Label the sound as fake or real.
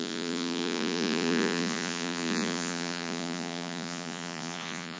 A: fake